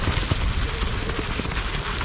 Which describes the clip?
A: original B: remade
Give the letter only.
A